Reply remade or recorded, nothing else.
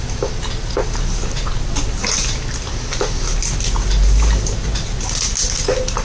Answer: recorded